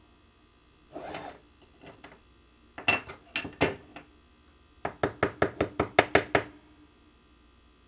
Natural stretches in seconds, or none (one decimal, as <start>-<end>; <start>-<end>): 0.0-0.5; 2.3-7.9